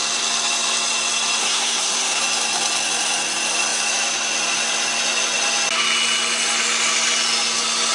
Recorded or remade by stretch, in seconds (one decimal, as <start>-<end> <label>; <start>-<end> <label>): 0.0-1.4 recorded; 1.4-2.2 remade; 2.2-7.9 recorded